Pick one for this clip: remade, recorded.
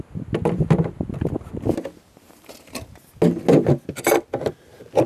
recorded